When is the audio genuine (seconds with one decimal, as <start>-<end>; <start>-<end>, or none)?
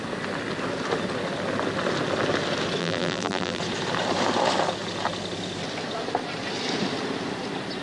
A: 0.0-2.8; 3.6-7.8